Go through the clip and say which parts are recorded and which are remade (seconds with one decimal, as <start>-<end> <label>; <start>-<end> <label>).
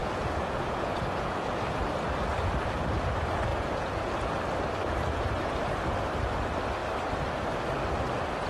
0.0-1.6 remade; 1.6-3.5 recorded; 3.5-4.2 remade; 4.2-8.5 recorded